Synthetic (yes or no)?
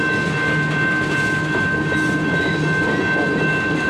no